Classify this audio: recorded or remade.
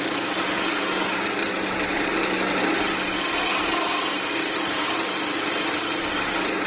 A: recorded